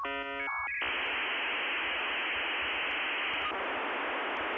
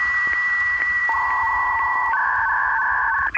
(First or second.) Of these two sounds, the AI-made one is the second